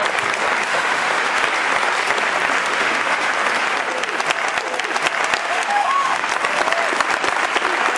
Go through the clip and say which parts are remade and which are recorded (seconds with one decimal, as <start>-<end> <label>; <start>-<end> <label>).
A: 0.0-0.7 recorded; 0.7-1.4 remade; 1.4-2.6 recorded; 2.6-3.3 remade; 3.3-5.4 recorded; 5.4-6.3 remade; 6.3-8.0 recorded